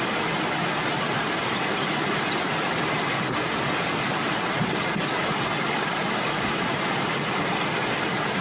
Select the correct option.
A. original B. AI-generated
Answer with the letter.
A